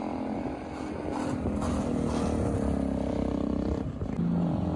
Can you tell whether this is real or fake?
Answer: real